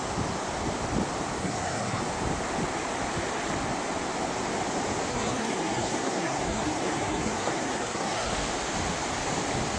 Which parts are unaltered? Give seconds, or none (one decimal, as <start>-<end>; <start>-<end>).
0.0-1.4; 2.0-5.1; 8.3-9.8